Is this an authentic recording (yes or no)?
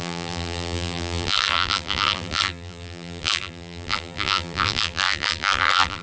no